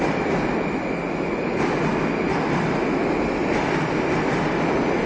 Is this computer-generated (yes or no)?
no